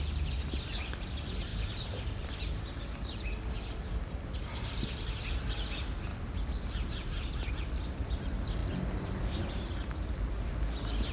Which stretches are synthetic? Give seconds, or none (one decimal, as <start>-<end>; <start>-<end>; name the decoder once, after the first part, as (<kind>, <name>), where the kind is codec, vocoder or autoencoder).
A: 1.5-2.6 (vocoder, BigVGAN v2)

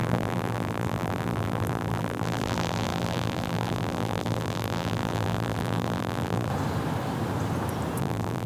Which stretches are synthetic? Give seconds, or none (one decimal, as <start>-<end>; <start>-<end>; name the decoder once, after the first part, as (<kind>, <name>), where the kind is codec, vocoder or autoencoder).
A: 0.0-6.5 (vocoder, BigVGAN v2); 8.0-8.5

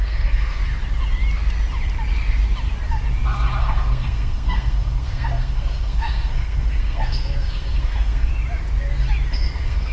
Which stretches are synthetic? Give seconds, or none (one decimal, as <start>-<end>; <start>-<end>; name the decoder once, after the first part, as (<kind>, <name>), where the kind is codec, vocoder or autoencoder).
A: 0.0-0.6 (codec, SNAC); 3.6-8.3; 9.3-9.9

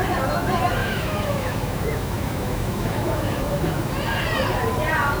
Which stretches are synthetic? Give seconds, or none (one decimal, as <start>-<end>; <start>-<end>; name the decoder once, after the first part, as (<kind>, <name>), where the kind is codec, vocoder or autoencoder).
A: 0.8-3.9 (autoencoder, DAC-VAE)

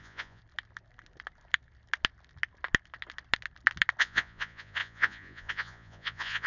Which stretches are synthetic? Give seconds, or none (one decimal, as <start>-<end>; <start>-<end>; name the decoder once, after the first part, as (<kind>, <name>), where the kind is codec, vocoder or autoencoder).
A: 0.0-0.4 (vocoder, Vocos); 4.0-6.5

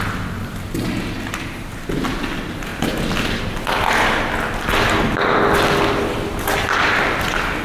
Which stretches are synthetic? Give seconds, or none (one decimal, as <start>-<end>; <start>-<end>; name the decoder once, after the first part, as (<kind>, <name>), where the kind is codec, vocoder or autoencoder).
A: none